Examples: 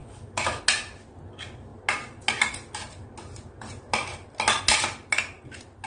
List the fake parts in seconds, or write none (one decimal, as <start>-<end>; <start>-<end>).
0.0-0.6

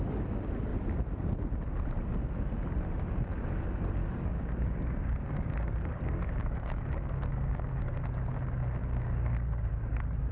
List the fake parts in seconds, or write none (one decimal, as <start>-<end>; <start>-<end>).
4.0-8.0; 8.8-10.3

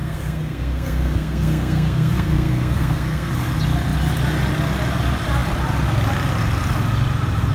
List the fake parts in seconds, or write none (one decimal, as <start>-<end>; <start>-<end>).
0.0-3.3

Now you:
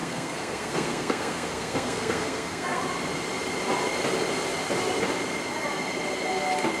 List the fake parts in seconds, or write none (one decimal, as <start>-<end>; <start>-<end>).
0.0-2.8

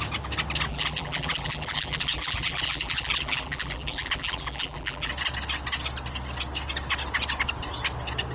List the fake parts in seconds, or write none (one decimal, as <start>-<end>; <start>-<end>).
0.7-5.1